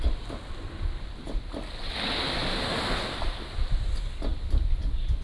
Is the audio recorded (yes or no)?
yes